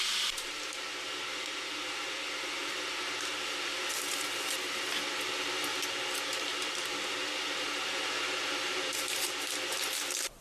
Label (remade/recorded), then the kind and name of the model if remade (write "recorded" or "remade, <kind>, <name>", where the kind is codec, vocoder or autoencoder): recorded